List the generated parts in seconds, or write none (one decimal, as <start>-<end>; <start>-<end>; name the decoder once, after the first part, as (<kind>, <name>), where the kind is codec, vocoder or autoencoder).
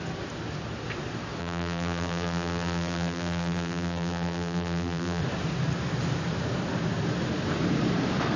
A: 1.4-5.2 (vocoder, BigVGAN v2)